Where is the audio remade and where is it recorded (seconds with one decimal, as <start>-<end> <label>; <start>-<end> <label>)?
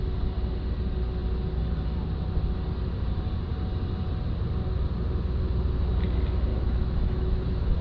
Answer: 0.0-6.5 recorded; 6.5-7.8 remade